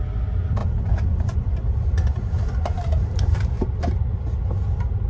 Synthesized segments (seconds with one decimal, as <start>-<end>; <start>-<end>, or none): 0.6-3.7